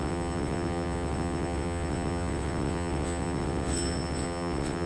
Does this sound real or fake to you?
fake